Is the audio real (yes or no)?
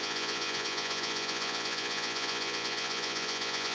no